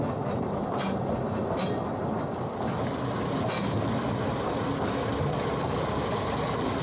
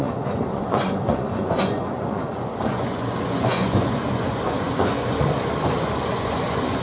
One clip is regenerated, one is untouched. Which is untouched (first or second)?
first